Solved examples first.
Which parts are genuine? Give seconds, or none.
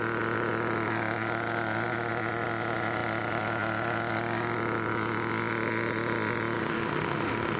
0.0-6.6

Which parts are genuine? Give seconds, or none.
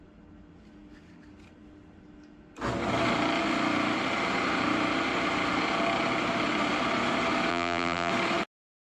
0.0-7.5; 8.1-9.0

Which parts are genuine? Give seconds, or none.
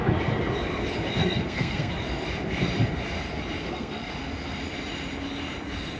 0.0-1.2; 1.9-3.6; 4.1-6.0